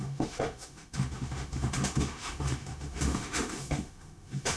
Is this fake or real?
fake